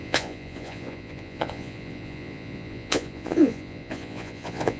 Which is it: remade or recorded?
remade